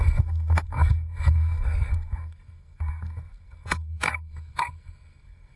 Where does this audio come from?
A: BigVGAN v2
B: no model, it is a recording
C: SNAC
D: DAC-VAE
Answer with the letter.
C